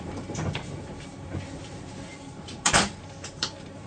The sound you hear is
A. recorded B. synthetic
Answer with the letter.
B